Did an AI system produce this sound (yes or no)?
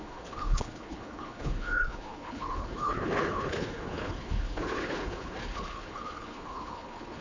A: yes